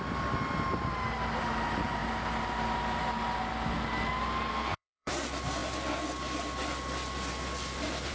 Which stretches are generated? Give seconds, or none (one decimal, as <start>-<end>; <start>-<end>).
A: 4.5-5.1